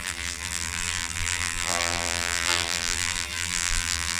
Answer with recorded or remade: remade